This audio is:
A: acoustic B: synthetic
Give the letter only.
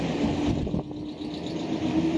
A